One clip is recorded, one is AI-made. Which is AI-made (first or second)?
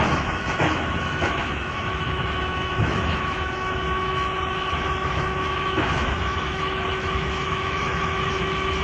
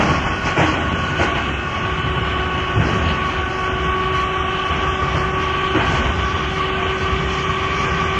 first